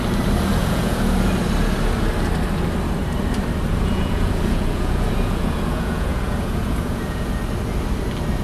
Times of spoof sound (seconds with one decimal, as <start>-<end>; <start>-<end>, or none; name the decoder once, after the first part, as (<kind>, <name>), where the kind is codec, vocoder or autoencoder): 0.6-1.3 (vocoder, Vocos); 3.7-7.3